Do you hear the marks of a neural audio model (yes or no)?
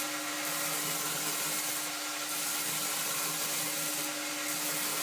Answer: no